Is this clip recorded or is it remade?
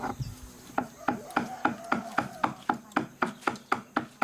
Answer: recorded